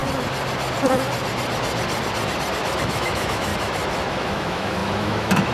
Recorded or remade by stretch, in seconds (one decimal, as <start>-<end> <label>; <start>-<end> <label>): 0.0-2.8 recorded; 2.8-3.5 remade; 3.5-4.1 recorded; 4.1-5.5 remade